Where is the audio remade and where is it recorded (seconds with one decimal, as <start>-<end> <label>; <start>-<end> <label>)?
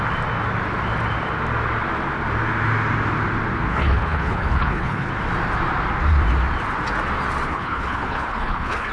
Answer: 0.0-3.7 recorded; 3.7-5.1 remade; 5.1-7.5 recorded; 7.5-8.9 remade